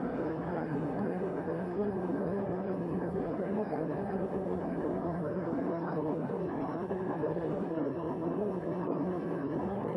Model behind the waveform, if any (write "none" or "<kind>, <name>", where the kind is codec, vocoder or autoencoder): codec, SNAC